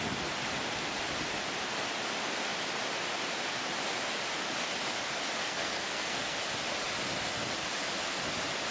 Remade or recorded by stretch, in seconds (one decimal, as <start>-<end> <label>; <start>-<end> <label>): 0.0-5.4 recorded; 5.4-6.4 remade; 6.4-8.7 recorded